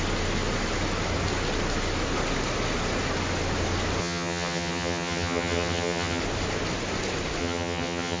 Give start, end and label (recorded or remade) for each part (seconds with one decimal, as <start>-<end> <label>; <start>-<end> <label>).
0.0-4.0 recorded; 4.0-6.2 remade; 6.2-7.4 recorded; 7.4-8.2 remade